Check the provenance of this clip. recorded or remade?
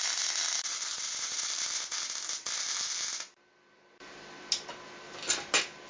recorded